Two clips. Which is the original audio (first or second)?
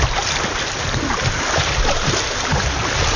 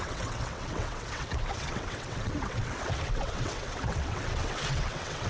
first